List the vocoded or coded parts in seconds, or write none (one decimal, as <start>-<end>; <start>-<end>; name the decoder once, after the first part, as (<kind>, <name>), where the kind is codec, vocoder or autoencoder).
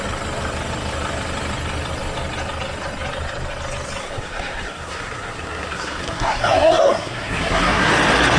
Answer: 4.0-7.9 (codec, SNAC)